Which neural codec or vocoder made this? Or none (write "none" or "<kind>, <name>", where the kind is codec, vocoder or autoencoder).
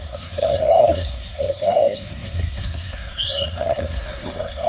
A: codec, SNAC